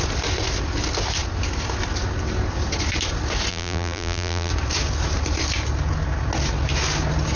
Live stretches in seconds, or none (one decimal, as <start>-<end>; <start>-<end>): 0.0-3.5; 4.5-7.4